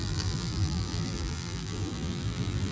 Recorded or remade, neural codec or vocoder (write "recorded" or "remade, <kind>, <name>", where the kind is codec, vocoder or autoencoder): remade, vocoder, BigVGAN v2